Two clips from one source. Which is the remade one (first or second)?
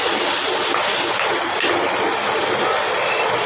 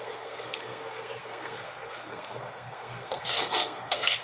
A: second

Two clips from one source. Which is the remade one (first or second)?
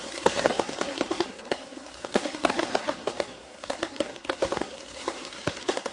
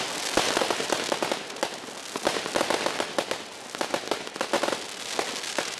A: first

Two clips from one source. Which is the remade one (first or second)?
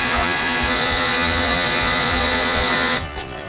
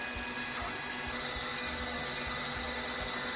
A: first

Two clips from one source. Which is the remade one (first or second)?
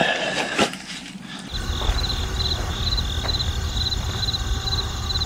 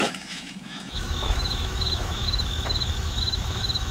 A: second